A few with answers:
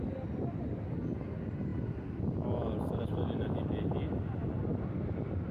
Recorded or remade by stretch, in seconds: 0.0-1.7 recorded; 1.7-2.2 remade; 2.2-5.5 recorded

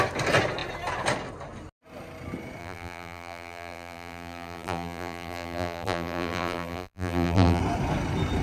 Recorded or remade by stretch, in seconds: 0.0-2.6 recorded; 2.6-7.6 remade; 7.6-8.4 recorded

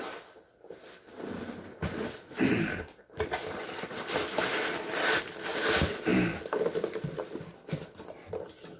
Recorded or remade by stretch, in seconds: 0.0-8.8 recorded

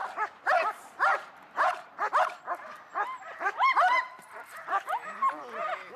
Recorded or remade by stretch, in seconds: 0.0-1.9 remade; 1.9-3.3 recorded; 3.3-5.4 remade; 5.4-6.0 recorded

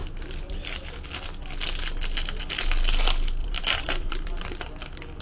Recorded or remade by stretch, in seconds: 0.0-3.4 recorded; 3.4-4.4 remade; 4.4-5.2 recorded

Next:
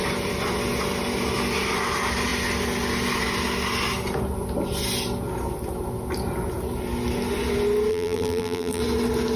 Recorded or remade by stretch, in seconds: 0.0-7.9 recorded; 7.9-8.8 remade; 8.8-9.4 recorded

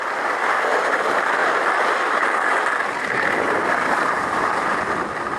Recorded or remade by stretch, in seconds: 0.0-5.4 recorded